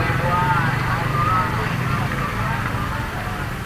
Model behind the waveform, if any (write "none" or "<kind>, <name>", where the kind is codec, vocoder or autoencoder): none